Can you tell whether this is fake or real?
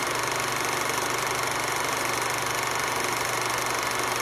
real